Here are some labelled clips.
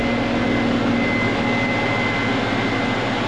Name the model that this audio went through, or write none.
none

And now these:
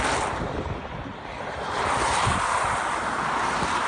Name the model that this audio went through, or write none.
vocoder, BigVGAN v2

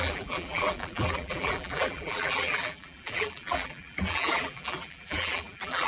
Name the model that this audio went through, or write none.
vocoder, BigVGAN v2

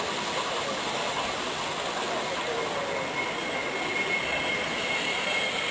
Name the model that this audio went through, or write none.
none